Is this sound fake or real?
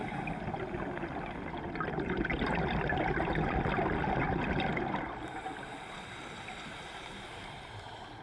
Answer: real